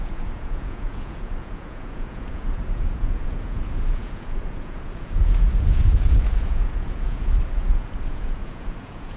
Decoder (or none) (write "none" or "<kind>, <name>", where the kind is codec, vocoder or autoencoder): vocoder, Vocos